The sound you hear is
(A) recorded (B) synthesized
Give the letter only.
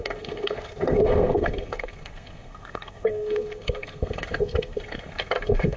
B